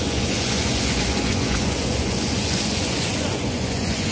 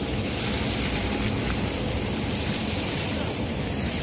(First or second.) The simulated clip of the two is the first